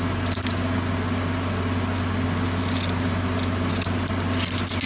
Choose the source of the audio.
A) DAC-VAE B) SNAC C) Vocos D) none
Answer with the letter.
D